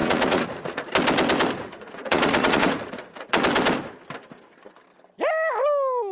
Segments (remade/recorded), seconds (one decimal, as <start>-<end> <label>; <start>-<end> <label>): 0.0-0.9 remade; 0.9-1.6 recorded; 1.6-3.4 remade; 3.4-6.1 recorded